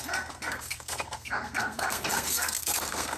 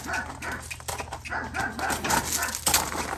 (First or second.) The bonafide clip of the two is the second